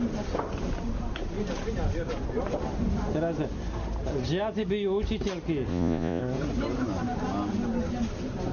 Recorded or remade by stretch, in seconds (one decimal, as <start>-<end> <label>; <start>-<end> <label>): 0.0-5.7 recorded; 5.7-6.2 remade; 6.2-8.5 recorded